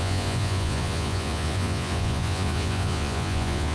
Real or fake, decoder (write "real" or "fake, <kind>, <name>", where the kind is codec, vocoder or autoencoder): fake, vocoder, Vocos